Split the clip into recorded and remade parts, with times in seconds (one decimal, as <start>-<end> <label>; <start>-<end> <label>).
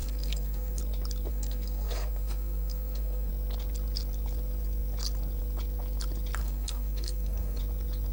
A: 0.0-0.8 remade; 0.8-1.3 recorded; 1.3-3.3 remade; 3.3-6.4 recorded; 6.4-7.6 remade; 7.6-8.1 recorded